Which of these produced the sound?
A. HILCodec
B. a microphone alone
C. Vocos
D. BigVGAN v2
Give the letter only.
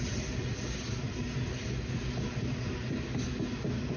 B